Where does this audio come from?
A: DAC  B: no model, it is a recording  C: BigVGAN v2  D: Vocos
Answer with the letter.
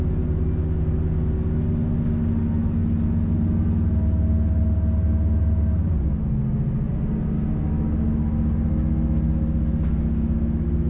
B